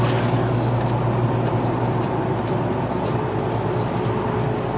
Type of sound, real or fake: real